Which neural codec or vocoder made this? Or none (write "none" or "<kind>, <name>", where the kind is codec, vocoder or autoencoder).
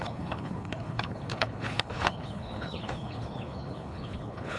codec, HILCodec